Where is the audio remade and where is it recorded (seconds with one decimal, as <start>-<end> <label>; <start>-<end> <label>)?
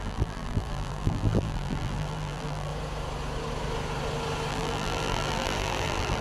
0.0-2.7 remade; 2.7-4.5 recorded; 4.5-6.2 remade